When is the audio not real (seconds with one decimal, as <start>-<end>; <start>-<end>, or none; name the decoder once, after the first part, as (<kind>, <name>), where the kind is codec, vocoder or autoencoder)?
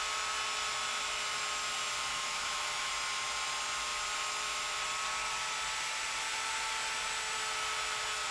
2.1-2.9 (autoencoder, DAC-VAE)